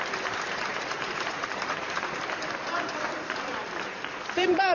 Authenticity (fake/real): fake